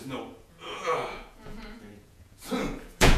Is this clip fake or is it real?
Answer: fake